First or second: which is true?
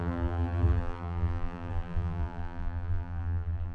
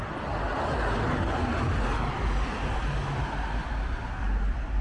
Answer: second